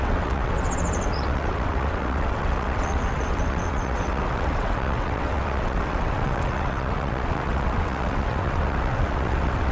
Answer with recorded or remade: remade